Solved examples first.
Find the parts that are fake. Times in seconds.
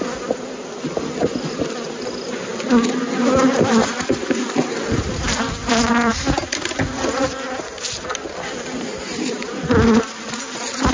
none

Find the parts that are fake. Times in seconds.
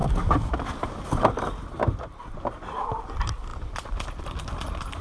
none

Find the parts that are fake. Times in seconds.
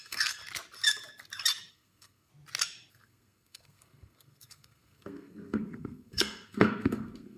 0.0-0.4; 1.7-2.3; 2.9-7.4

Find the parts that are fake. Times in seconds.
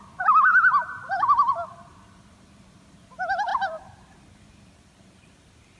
0.5-3.0; 3.5-5.8